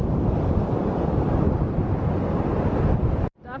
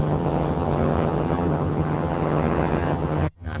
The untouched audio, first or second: first